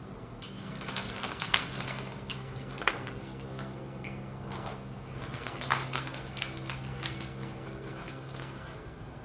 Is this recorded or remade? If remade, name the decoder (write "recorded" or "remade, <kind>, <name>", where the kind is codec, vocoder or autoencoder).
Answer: remade, codec, SNAC